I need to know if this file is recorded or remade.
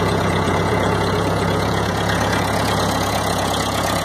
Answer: remade